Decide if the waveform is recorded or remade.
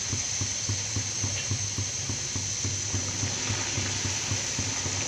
recorded